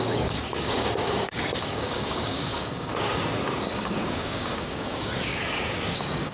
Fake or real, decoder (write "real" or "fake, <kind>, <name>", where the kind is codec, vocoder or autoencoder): fake, codec, DAC